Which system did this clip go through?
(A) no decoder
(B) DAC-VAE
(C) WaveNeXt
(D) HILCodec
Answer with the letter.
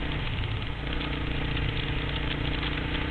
A